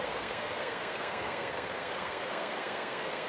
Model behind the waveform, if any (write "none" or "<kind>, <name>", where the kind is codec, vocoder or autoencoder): codec, SNAC